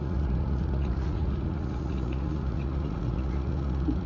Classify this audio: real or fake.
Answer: fake